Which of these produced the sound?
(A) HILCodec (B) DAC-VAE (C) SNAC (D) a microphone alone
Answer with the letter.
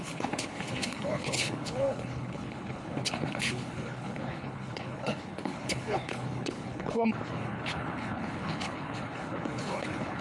A